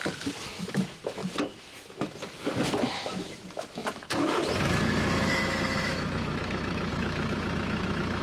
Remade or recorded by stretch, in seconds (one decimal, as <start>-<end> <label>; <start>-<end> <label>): 0.0-8.2 remade